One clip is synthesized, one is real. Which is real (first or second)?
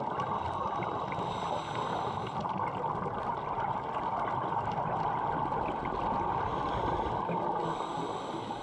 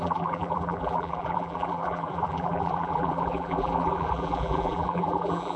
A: first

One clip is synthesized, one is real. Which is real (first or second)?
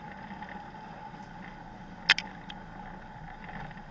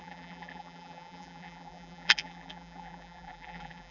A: first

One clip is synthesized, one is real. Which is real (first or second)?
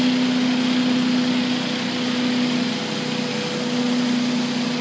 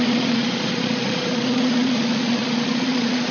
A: first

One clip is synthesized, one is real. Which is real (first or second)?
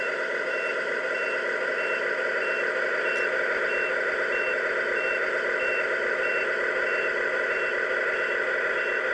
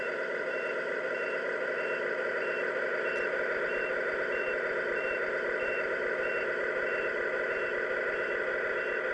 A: first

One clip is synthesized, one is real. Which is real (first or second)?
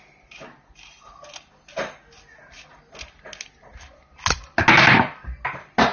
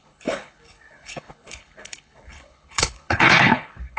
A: first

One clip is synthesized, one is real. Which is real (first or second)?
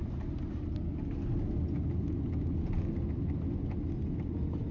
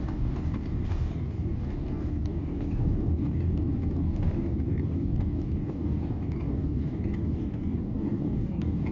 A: first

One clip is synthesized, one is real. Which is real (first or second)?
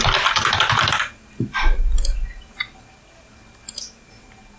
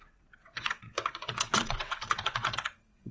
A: first